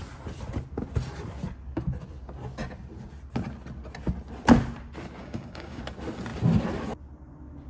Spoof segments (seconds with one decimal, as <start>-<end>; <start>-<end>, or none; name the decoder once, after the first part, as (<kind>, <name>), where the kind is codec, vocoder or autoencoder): 5.2-5.8 (codec, DAC)